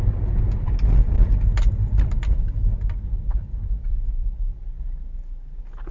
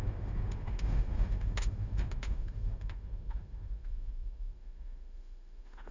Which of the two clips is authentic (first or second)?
first